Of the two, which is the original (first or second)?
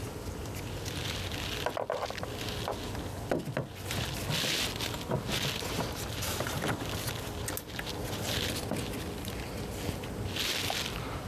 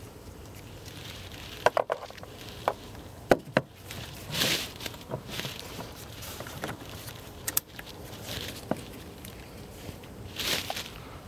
first